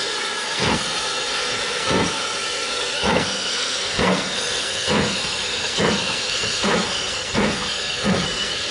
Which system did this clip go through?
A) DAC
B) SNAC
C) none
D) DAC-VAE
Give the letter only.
B